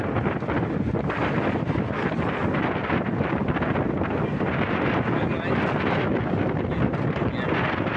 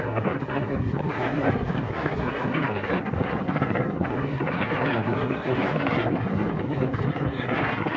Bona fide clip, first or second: first